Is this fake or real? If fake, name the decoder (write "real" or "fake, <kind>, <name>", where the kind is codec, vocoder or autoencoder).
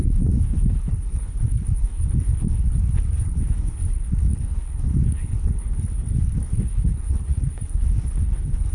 fake, codec, HILCodec